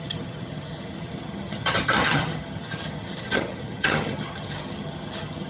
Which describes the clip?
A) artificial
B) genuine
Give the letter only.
A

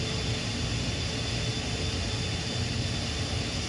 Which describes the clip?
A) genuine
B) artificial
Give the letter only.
A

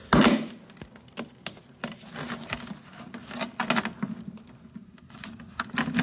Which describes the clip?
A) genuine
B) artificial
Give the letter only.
A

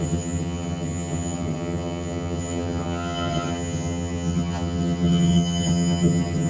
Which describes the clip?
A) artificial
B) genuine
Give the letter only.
A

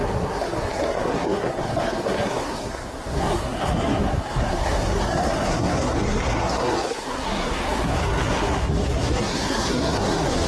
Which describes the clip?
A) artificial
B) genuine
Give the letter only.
A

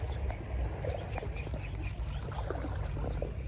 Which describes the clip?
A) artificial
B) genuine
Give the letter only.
B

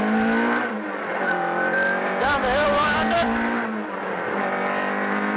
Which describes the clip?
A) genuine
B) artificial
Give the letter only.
B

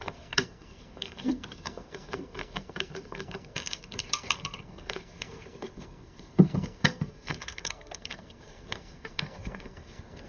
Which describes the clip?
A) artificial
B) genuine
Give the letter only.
A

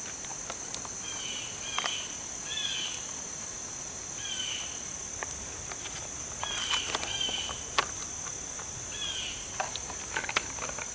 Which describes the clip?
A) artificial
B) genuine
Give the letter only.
B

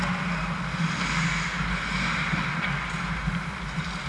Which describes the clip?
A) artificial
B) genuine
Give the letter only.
B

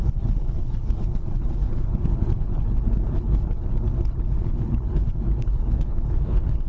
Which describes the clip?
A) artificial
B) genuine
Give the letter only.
A